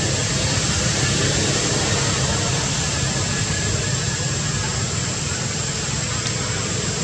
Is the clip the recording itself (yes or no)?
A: yes